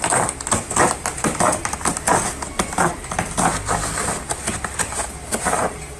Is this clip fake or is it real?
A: real